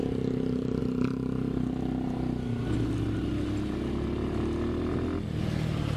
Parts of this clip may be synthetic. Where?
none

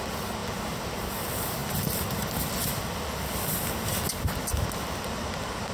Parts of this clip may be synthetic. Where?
none

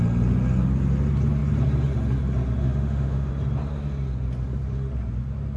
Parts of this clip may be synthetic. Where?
2.6-3.3 (autoencoder, DAC-VAE)

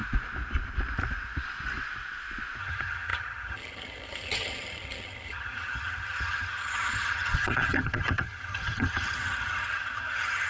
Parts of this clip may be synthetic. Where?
2.6-10.5 (vocoder, HiFi-GAN)